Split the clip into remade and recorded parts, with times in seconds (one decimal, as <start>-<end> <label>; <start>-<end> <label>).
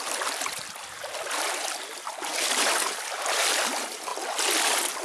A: 0.0-5.0 recorded